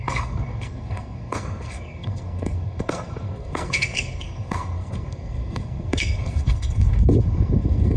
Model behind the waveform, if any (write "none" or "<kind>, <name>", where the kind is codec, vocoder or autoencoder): codec, SNAC